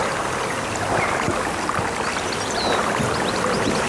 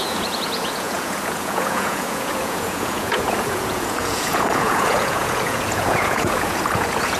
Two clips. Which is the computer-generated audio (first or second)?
second